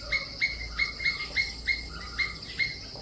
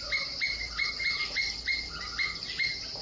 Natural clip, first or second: first